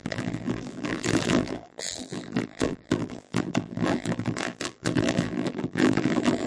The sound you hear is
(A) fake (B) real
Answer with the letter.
A